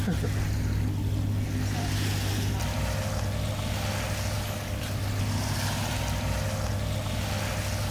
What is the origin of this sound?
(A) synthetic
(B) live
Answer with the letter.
B